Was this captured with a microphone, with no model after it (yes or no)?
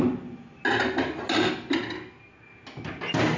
yes